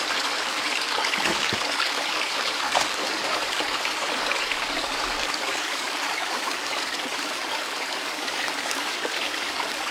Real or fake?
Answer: fake